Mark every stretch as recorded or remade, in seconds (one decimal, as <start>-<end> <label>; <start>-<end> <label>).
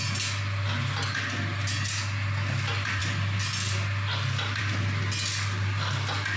0.0-6.4 recorded